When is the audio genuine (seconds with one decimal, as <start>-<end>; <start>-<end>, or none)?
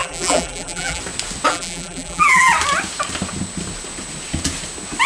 1.0-1.5; 2.5-5.1